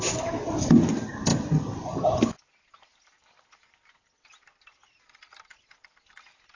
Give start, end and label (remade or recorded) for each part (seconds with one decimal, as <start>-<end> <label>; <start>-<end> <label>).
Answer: 0.0-6.6 recorded